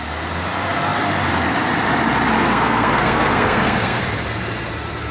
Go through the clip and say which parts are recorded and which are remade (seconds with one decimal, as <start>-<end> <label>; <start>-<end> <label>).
0.0-2.4 recorded; 2.4-4.0 remade; 4.0-5.1 recorded